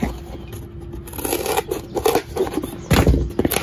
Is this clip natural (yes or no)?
yes